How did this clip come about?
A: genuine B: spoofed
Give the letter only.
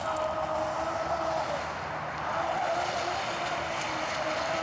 A